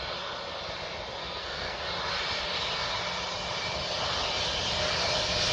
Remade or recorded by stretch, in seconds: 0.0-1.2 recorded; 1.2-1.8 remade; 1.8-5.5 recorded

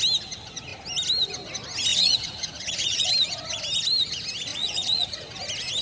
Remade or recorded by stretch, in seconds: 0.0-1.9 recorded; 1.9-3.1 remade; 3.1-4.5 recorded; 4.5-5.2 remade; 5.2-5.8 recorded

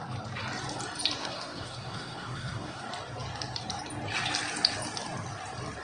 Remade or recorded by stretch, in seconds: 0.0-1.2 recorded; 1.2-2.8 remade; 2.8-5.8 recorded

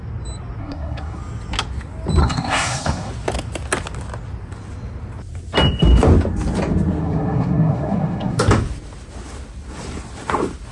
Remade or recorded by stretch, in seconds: 0.0-0.6 recorded; 0.6-1.2 remade; 1.2-2.2 recorded; 2.2-3.1 remade; 3.1-7.0 recorded; 7.0-8.4 remade; 8.4-10.7 recorded

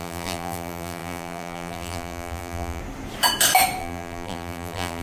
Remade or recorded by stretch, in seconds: 0.0-2.8 remade; 2.8-3.8 recorded; 3.8-5.0 remade

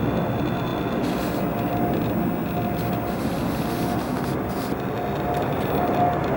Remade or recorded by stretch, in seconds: 0.0-6.4 recorded

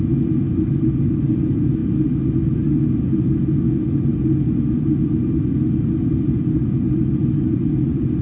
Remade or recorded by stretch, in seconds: 0.0-8.2 recorded

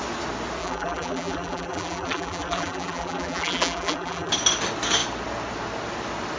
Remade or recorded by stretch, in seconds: 0.0-0.6 recorded; 0.6-4.3 remade; 4.3-6.4 recorded